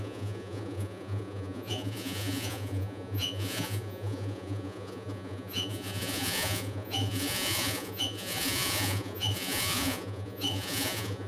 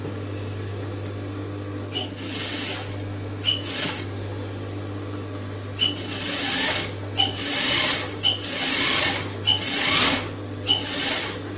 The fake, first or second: first